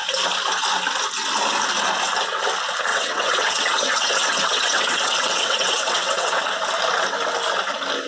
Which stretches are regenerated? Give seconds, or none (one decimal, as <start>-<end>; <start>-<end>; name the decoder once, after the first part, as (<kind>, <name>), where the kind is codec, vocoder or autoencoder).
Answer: 2.9-6.4 (vocoder, WaveNeXt)